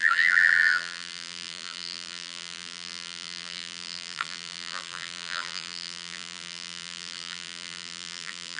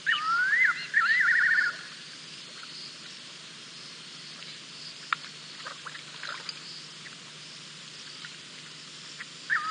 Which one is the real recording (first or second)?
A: second